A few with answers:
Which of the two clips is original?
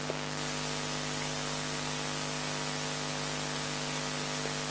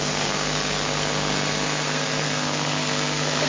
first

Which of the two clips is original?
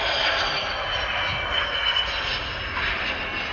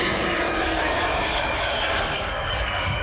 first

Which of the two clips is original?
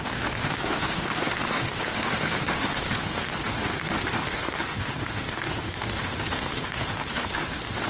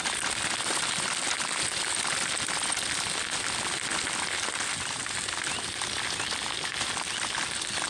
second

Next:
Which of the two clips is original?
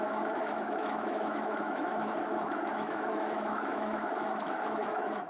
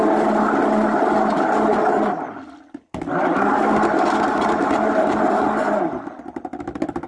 second